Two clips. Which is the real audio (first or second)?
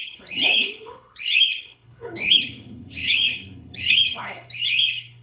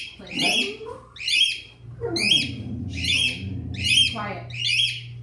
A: second